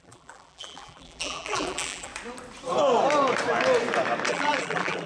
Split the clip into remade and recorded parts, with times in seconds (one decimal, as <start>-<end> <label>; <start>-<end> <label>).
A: 0.0-2.1 remade; 2.1-4.3 recorded; 4.3-5.1 remade